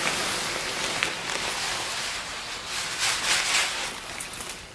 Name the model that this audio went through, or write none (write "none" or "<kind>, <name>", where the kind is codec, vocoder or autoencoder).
none